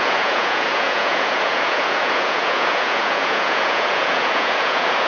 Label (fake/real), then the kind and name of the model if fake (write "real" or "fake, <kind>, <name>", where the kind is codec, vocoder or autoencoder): fake, vocoder, Vocos